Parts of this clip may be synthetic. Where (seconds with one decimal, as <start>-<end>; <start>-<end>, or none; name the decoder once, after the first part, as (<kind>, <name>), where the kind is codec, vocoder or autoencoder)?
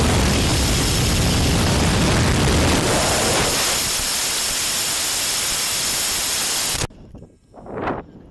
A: none